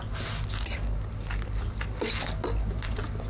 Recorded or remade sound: recorded